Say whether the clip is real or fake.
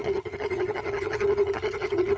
fake